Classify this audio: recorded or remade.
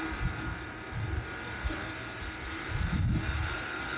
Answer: recorded